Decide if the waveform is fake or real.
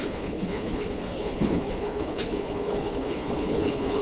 fake